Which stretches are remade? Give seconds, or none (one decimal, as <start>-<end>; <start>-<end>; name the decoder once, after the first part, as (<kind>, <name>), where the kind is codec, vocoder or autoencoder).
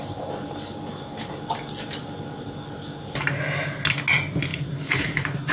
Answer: none